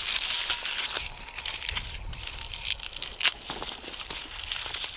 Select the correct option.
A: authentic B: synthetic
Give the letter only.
A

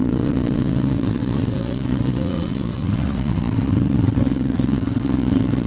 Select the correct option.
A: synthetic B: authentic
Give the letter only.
A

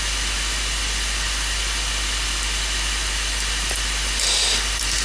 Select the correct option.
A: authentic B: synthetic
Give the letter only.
A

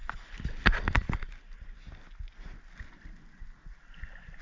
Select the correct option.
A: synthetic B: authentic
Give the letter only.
B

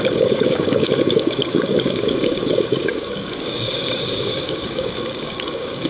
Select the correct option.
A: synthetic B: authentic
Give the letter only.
A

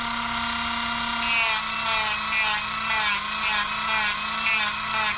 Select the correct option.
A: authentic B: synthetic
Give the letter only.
A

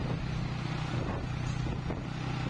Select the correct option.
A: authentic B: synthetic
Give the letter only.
A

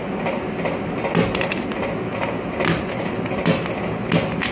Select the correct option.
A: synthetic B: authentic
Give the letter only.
B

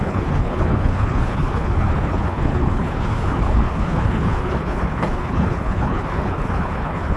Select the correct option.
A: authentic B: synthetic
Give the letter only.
B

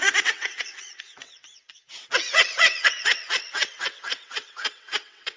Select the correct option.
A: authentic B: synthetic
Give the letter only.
B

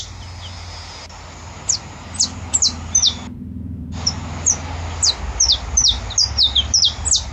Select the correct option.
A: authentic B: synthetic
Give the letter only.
A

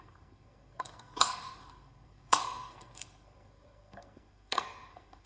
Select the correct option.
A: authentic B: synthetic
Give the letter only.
B